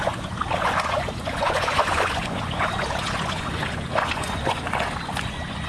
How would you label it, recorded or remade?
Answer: remade